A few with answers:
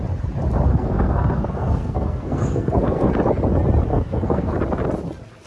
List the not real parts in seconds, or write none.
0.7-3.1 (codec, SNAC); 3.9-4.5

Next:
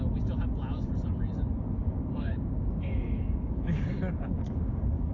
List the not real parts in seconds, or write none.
1.8-5.1 (codec, DAC)

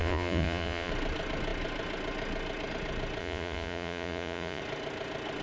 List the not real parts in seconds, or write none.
0.0-0.9 (vocoder, Vocos); 3.2-4.6

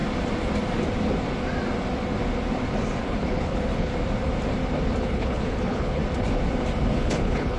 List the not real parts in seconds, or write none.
3.0-3.9 (codec, HILCodec); 5.0-6.0; 6.9-7.6

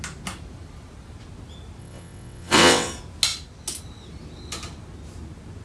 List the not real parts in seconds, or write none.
1.8-2.9 (vocoder, WaveNeXt)

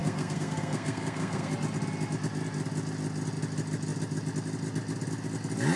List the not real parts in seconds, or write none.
0.0-1.5 (codec, SNAC)

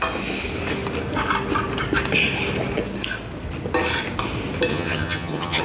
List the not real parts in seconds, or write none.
4.7-5.6 (vocoder, HiFi-GAN)

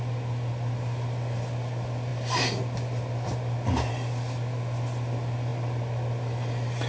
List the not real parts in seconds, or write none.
none